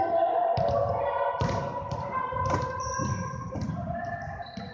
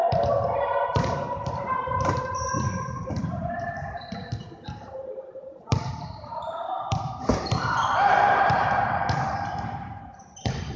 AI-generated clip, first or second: second